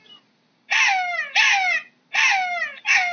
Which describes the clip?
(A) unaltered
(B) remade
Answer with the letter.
A